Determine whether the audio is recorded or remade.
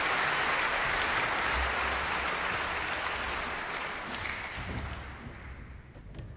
recorded